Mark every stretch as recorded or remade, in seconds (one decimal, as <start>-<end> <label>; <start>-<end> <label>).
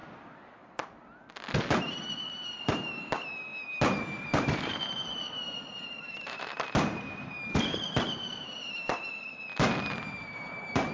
0.0-1.8 recorded; 1.8-3.5 remade; 3.5-4.2 recorded; 4.2-9.5 remade; 9.5-10.2 recorded; 10.2-10.9 remade